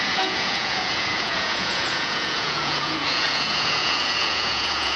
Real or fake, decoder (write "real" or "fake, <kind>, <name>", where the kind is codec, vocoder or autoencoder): fake, vocoder, Vocos